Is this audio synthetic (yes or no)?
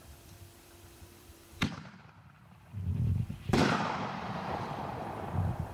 yes